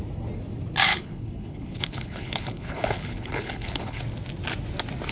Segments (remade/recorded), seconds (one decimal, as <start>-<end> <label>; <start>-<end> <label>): 0.0-0.9 recorded; 0.9-4.0 remade; 4.0-5.1 recorded